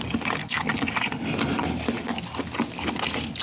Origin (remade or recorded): recorded